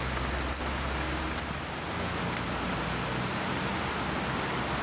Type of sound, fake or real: real